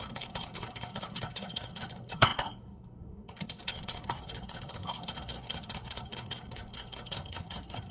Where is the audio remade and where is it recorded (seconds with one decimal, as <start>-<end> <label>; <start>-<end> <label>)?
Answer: 0.0-7.9 remade